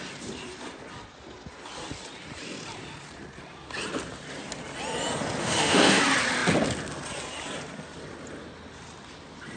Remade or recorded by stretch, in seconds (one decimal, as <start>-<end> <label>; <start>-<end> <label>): 0.0-5.4 recorded; 5.4-6.0 remade; 6.0-9.6 recorded